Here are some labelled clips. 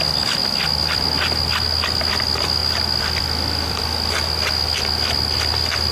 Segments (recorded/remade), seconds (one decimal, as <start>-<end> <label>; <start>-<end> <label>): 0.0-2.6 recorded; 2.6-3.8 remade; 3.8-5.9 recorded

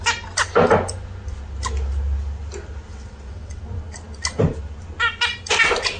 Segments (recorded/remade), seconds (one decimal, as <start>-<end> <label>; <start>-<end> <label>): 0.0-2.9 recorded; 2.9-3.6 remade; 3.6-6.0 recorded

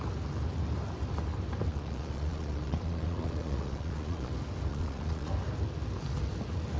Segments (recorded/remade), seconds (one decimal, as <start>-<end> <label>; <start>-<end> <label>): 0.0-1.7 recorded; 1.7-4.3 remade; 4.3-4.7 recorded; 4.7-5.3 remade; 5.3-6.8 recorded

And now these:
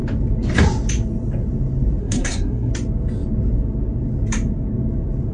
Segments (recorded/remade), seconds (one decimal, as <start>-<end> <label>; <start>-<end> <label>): 0.0-2.0 recorded; 2.0-2.7 remade; 2.7-5.3 recorded